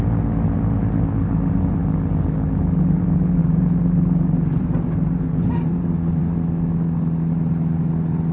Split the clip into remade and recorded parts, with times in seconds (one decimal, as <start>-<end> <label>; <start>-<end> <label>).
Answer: 0.0-3.4 recorded; 3.4-6.2 remade; 6.2-8.3 recorded